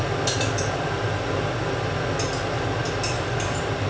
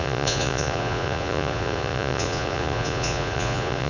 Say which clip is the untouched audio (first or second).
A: first